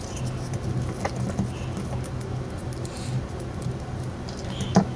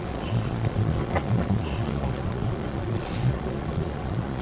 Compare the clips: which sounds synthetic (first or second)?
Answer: second